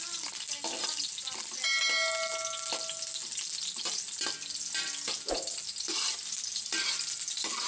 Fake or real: real